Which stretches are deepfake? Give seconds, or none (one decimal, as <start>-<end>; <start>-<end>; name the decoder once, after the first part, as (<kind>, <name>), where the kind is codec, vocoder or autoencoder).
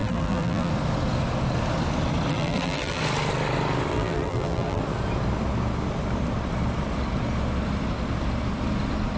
0.0-0.7 (vocoder, BigVGAN v2); 2.3-3.0; 3.9-4.8